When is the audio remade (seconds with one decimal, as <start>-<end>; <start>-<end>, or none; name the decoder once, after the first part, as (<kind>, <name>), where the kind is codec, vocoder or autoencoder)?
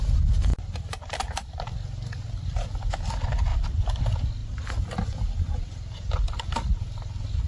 0.5-1.6 (vocoder, BigVGAN v2)